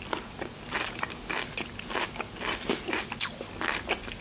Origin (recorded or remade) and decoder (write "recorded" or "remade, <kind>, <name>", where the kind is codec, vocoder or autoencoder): recorded